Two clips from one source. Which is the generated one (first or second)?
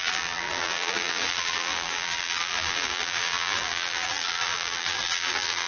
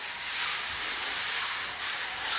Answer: first